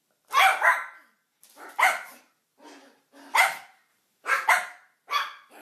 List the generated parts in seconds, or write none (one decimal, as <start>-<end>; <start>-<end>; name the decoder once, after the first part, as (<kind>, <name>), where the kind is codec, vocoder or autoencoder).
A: 0.5-2.3 (vocoder, BigVGAN v2); 3.9-4.5